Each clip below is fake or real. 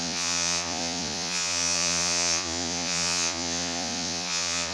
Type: fake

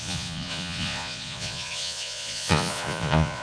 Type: fake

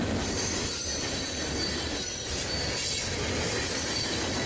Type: real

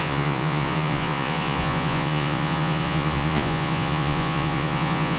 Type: fake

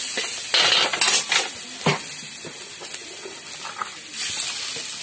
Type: real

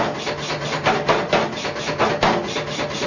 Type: real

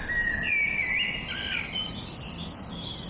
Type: real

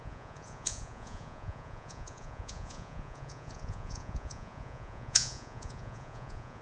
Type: fake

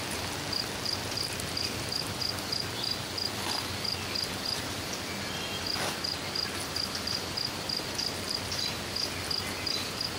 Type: real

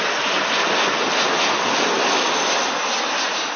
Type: real